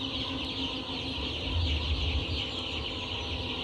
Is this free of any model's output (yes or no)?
yes